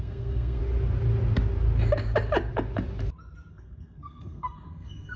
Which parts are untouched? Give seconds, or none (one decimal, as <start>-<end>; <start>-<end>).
0.6-3.5

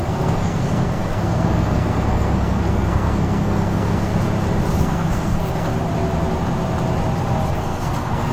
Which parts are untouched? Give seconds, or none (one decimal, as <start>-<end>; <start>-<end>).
4.1-4.8; 5.7-7.5